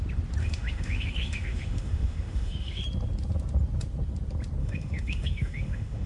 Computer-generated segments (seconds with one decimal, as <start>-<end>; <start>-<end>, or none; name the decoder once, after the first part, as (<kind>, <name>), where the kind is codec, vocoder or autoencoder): 0.4-2.8 (autoencoder, DAC-VAE); 4.6-6.1